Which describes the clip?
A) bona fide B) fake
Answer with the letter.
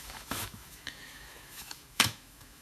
B